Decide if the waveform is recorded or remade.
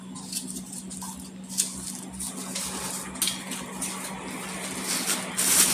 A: recorded